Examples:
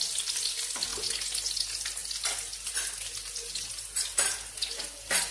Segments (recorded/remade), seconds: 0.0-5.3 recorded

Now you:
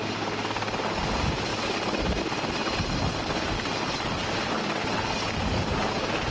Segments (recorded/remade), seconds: 0.0-1.5 recorded; 1.5-2.2 remade; 2.2-6.3 recorded

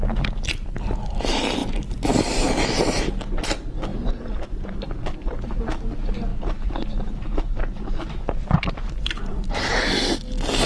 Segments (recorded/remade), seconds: 0.0-1.6 recorded; 1.6-2.6 remade; 2.6-3.9 recorded; 3.9-5.6 remade; 5.6-6.3 recorded; 6.3-9.5 remade; 9.5-10.7 recorded

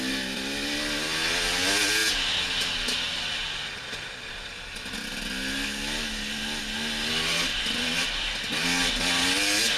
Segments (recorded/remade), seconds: 0.0-9.8 recorded

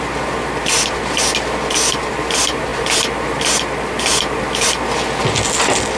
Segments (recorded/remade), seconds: 0.0-6.0 recorded

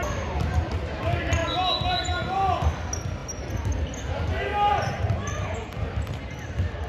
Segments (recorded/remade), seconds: 0.0-4.5 recorded; 4.5-6.0 remade; 6.0-6.9 recorded

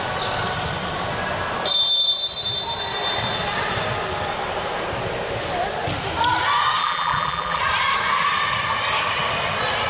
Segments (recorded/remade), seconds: 0.0-6.8 recorded; 6.8-7.6 remade; 7.6-9.9 recorded

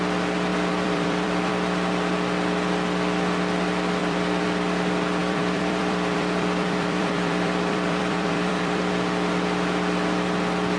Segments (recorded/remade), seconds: 0.0-0.5 recorded; 0.5-1.5 remade; 1.5-4.0 recorded; 4.0-4.6 remade; 4.6-5.2 recorded; 5.2-8.9 remade; 8.9-10.8 recorded